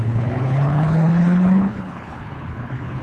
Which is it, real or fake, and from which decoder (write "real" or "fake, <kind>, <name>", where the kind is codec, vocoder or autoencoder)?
fake, codec, HILCodec